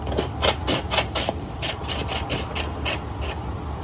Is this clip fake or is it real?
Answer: real